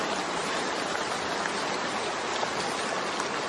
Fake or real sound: real